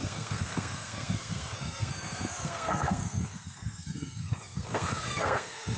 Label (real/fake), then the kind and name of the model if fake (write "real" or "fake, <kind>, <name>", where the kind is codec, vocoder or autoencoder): fake, codec, SNAC